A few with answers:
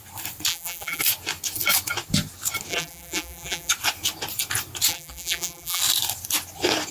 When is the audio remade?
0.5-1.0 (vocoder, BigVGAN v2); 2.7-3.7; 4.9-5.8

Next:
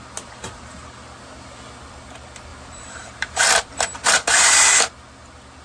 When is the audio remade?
2.5-4.7 (vocoder, BigVGAN v2)

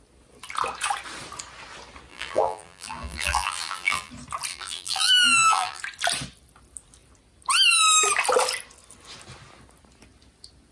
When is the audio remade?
2.1-4.1 (vocoder, BigVGAN v2); 4.5-5.8